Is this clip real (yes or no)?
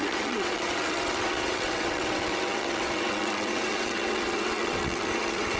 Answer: no